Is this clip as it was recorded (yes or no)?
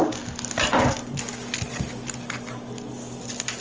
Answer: yes